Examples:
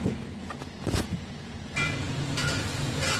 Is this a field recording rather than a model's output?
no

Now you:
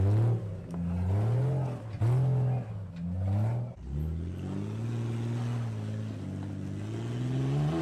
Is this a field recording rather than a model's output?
yes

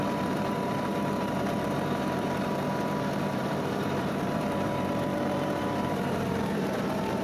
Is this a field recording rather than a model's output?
no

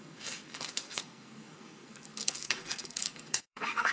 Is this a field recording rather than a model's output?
no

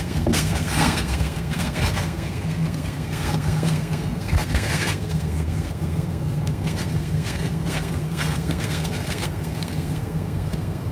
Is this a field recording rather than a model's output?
no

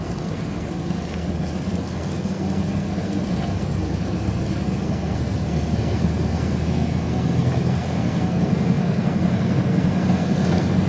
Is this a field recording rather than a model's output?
no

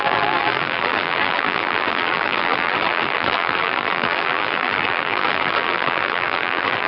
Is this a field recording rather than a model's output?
no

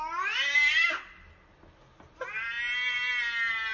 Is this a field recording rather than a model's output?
yes